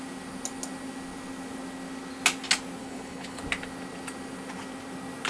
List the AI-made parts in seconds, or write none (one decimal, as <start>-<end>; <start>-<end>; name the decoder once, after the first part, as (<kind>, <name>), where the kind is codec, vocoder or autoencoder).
2.8-3.4 (codec, HILCodec)